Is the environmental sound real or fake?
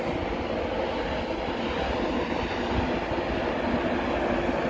real